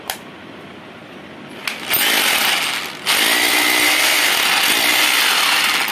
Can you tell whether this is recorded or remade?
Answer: recorded